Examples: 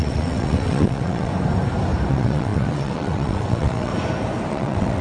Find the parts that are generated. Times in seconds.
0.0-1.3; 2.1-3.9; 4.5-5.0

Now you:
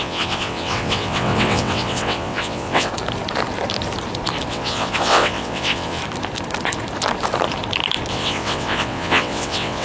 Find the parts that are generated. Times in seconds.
0.0-2.9; 4.5-6.0; 8.1-9.8